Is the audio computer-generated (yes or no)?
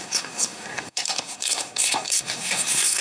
yes